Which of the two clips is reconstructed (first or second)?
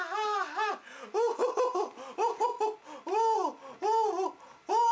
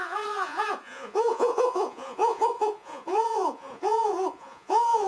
second